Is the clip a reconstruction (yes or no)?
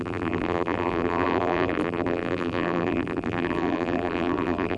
yes